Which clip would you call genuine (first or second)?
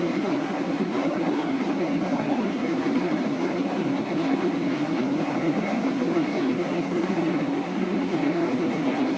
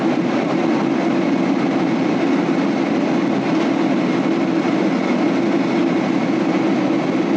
second